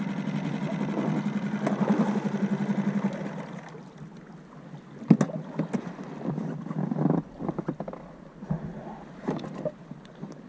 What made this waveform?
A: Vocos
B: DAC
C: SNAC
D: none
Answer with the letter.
D